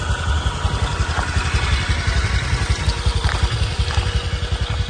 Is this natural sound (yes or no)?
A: yes